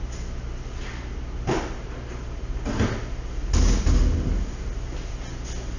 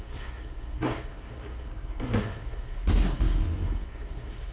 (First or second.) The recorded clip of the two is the first